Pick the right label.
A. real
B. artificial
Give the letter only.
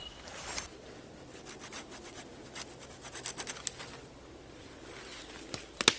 A